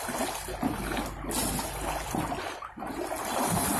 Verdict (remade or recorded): recorded